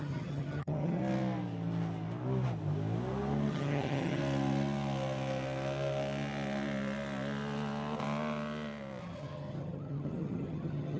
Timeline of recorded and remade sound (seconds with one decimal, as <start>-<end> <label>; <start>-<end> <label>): 0.0-1.0 remade; 1.0-3.5 recorded; 3.5-4.2 remade; 4.2-9.0 recorded; 9.0-11.0 remade